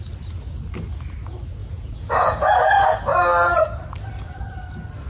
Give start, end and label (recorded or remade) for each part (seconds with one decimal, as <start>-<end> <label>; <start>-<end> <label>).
0.0-1.6 recorded; 1.6-2.5 remade; 2.5-5.1 recorded